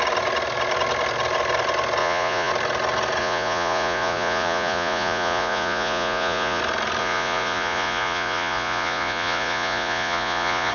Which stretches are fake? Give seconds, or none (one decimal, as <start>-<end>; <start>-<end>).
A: 2.0-2.5; 3.2-6.6; 7.0-10.7